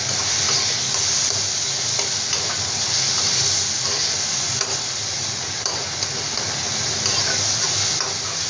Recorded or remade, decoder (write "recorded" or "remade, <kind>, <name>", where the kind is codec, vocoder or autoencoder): recorded